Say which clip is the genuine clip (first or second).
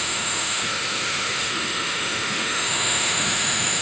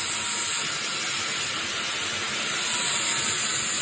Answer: second